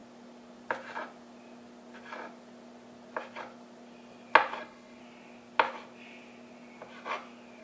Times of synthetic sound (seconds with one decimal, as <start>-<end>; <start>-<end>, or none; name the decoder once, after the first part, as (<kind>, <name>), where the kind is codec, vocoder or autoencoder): 4.6-5.0 (codec, HILCodec)